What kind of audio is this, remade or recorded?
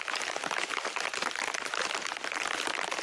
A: recorded